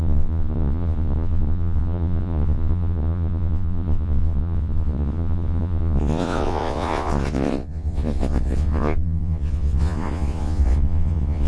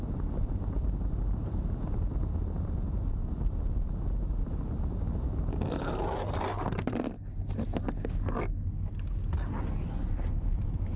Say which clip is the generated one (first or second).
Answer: first